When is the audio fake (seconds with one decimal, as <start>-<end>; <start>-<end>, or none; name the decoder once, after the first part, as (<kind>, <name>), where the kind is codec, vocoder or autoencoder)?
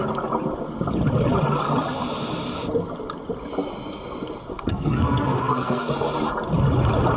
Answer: 4.5-5.9 (codec, SNAC)